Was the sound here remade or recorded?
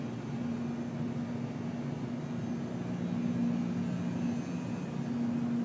recorded